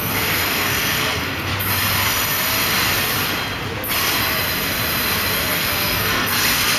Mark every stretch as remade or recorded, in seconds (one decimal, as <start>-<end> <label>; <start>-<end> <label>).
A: 0.0-1.5 remade; 1.5-5.5 recorded; 5.5-6.8 remade